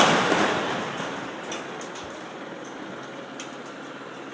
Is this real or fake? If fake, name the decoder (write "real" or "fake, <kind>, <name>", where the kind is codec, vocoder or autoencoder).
real